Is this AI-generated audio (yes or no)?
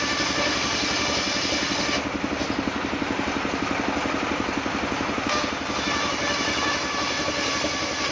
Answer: no